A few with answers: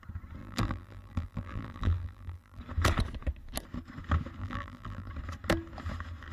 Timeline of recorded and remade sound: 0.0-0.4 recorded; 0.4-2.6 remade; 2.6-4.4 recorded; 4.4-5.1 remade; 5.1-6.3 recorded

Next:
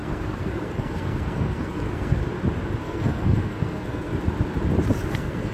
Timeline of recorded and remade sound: 0.0-2.2 remade; 2.2-2.8 recorded; 2.8-4.1 remade; 4.1-5.1 recorded; 5.1-5.5 remade

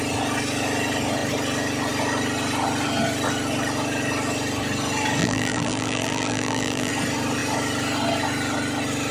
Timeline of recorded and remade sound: 0.0-5.2 recorded; 5.2-6.9 remade; 6.9-9.1 recorded

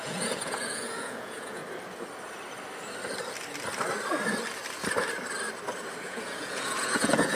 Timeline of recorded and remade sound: 0.0-1.6 remade; 1.6-6.0 recorded; 6.0-7.3 remade

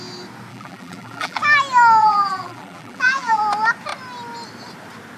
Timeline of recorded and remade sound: 0.0-0.5 recorded; 0.5-1.4 remade; 1.4-2.0 recorded; 2.0-3.4 remade; 3.4-5.2 recorded

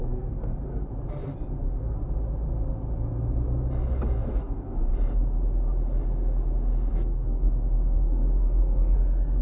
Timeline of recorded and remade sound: 0.0-0.9 remade; 0.9-1.6 recorded; 1.6-2.0 remade; 2.0-4.1 recorded; 4.1-4.9 remade; 4.9-6.9 recorded; 6.9-9.4 remade

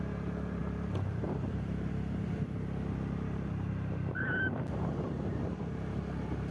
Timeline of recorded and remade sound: 0.0-0.6 recorded; 0.6-1.9 remade; 1.9-6.5 recorded